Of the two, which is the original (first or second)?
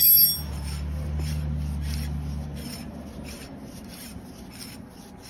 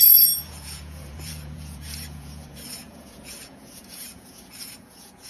first